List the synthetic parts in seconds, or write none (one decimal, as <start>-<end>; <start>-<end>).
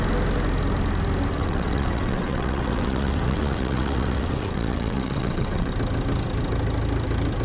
1.3-5.7